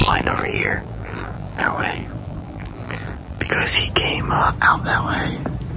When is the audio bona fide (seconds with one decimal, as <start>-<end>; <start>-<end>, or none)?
3.5-5.8